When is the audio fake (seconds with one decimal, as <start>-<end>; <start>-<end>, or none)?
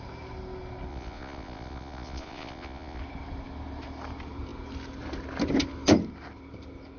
0.9-3.0